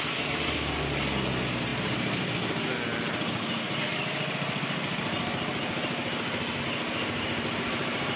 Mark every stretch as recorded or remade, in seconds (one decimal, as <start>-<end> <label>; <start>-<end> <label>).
0.0-8.2 recorded